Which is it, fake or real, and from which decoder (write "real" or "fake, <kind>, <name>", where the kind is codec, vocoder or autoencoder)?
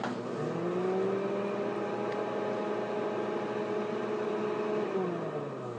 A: real